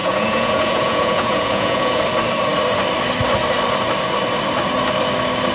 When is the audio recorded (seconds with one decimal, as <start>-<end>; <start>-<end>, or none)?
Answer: 2.0-5.5